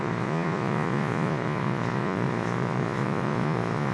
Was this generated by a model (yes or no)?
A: yes